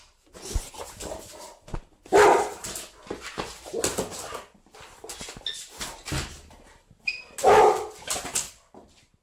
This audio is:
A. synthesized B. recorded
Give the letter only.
B